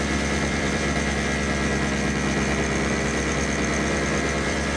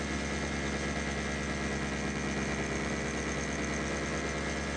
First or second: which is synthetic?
first